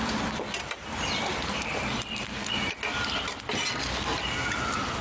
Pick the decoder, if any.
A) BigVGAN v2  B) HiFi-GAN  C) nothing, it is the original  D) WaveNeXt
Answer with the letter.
C